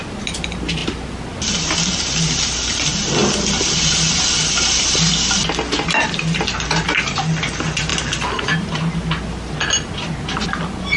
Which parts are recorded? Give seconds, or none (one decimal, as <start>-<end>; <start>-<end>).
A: 0.0-11.0